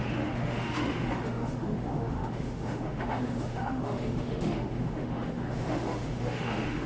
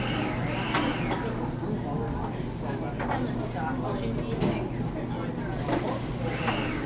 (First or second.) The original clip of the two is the second